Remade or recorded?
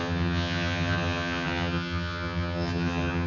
remade